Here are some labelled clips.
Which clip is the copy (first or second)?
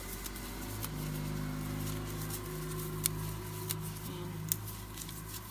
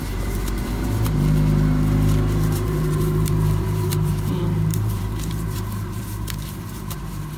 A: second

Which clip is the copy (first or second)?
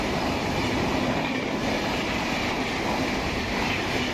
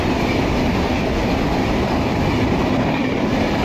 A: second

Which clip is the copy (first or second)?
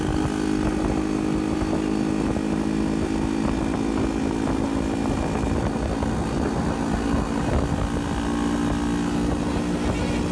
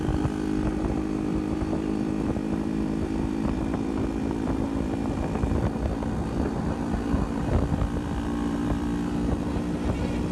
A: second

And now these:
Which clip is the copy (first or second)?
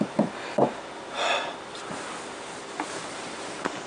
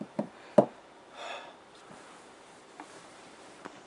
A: second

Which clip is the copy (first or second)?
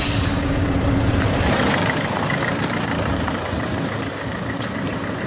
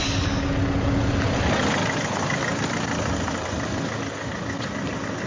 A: first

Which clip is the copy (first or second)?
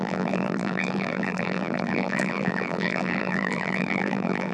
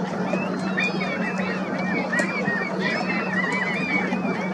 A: first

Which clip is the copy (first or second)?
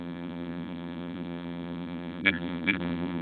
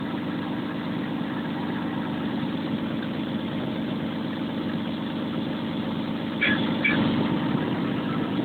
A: first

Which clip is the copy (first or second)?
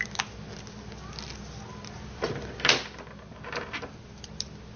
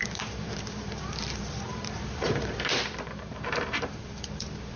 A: second